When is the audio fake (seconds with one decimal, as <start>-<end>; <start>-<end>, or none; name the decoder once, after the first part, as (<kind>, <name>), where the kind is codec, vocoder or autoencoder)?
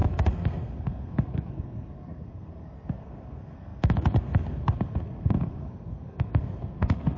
0.0-7.2 (codec, SNAC)